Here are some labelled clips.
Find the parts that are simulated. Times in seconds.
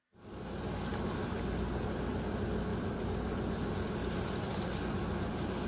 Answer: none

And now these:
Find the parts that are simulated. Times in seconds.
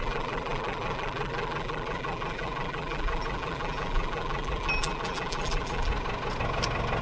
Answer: 0.0-5.9 (vocoder, BigVGAN v2)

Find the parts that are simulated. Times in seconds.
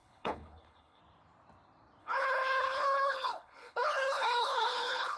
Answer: 0.0-1.0 (codec, HILCodec); 2.0-5.2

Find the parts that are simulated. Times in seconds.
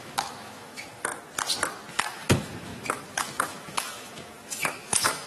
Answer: 0.0-1.1 (autoencoder, DAC-VAE); 1.9-5.3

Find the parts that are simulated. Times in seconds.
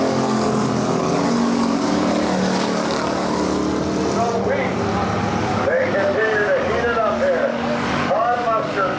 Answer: 0.0-3.6 (codec, DAC); 5.4-9.0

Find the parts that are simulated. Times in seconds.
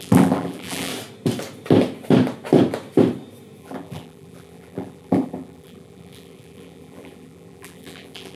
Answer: 0.0-0.9 (vocoder, BigVGAN v2); 3.6-8.4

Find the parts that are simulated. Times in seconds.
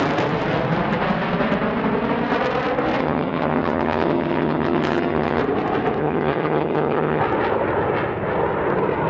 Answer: 3.0-5.4 (vocoder, HiFi-GAN); 6.0-7.2